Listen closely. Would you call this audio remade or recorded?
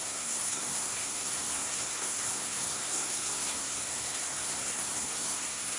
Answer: remade